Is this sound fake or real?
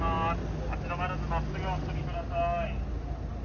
real